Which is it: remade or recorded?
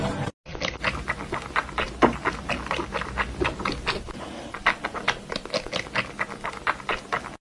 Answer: recorded